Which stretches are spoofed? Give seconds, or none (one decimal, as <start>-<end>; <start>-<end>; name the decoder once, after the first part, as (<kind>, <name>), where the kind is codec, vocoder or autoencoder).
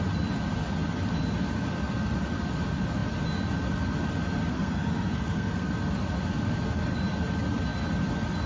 4.5-5.7 (codec, SNAC)